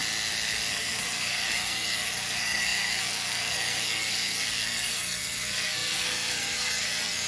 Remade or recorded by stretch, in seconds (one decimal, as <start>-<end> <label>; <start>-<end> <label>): 0.0-0.7 recorded; 0.7-7.3 remade